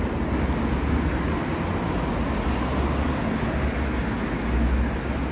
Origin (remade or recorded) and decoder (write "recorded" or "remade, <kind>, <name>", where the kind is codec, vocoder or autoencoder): recorded